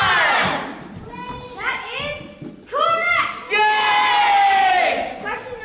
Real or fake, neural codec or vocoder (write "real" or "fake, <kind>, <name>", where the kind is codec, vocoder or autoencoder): real